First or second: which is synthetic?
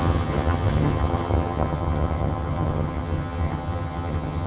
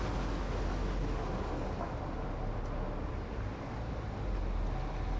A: first